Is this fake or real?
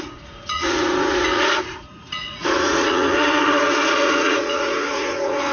fake